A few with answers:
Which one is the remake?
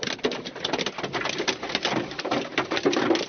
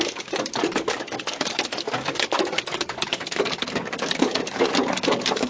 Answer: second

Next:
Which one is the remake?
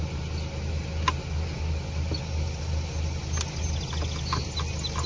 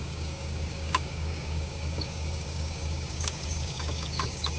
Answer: second